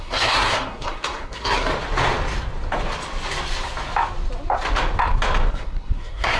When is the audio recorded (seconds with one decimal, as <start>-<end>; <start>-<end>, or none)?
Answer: 1.7-5.5